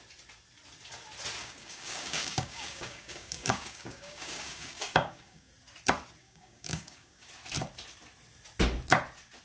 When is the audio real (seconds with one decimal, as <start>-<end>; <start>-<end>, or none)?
0.0-1.4; 5.5-6.2; 7.3-9.4